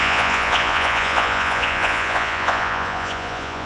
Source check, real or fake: fake